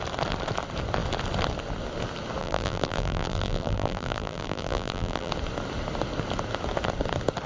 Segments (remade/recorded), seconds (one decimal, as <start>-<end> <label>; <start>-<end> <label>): 0.0-2.4 recorded; 2.4-5.3 remade; 5.3-7.5 recorded

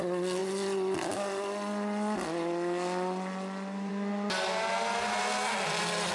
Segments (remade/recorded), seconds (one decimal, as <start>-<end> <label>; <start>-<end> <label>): 0.0-6.1 recorded